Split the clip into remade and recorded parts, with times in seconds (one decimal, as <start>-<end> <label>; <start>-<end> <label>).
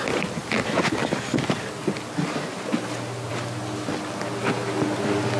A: 0.0-5.4 recorded